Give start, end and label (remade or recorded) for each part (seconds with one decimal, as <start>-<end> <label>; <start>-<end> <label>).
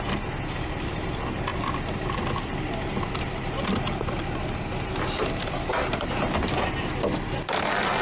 0.0-8.0 recorded